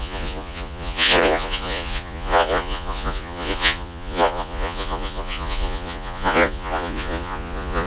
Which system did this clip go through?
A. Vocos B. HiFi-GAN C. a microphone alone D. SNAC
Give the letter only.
A